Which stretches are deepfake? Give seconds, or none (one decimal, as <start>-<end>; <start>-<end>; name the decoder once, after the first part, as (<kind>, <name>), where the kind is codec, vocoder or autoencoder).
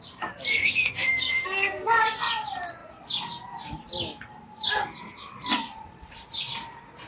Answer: 0.5-1.9 (codec, SNAC)